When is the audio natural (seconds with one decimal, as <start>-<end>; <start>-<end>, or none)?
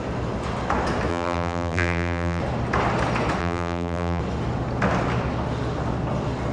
0.0-1.1; 2.4-3.4; 4.2-6.5